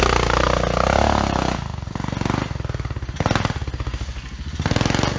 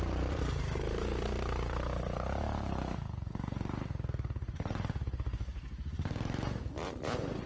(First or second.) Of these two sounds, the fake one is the second